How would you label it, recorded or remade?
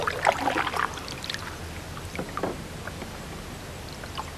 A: recorded